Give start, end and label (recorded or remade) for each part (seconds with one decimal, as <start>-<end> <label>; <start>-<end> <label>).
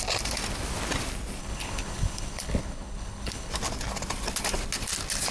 0.0-1.4 recorded; 1.4-3.5 remade; 3.5-5.3 recorded